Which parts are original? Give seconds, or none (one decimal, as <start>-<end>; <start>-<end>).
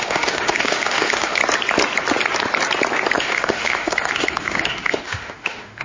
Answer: 1.4-3.2